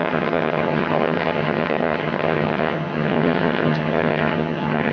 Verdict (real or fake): fake